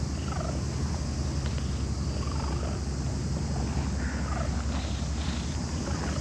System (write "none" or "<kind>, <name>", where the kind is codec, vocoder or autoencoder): none